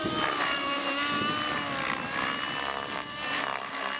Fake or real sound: real